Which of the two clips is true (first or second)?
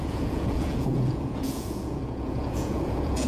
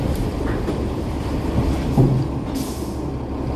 second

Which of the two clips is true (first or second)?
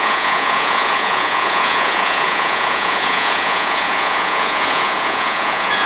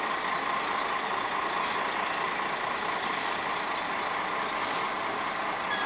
second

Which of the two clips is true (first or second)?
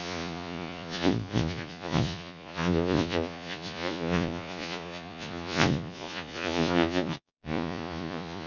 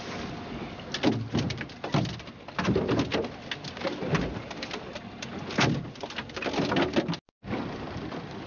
second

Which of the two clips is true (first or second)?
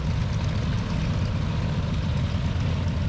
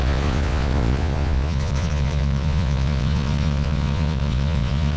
first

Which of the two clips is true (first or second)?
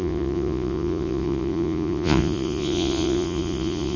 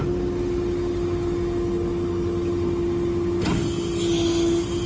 second